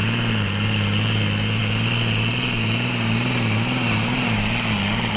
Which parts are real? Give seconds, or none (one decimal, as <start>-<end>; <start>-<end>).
0.0-5.2